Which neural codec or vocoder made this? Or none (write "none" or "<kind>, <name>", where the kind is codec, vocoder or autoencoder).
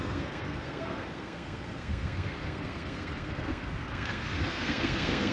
codec, SNAC